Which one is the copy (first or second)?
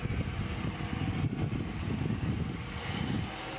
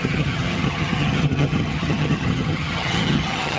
second